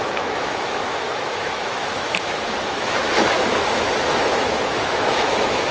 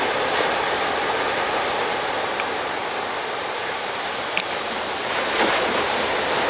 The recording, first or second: second